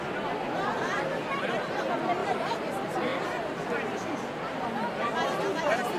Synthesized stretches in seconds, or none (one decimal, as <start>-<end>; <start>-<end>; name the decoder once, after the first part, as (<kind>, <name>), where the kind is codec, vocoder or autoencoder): none